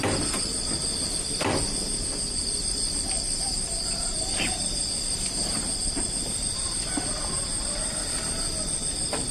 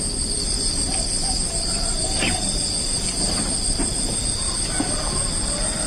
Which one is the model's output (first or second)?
first